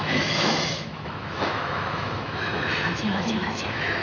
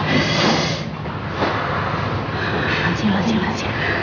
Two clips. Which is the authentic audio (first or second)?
second